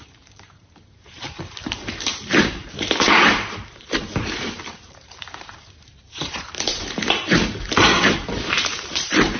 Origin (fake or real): fake